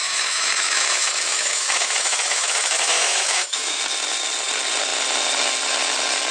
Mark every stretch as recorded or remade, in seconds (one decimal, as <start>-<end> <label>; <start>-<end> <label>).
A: 0.0-3.8 remade; 3.8-6.3 recorded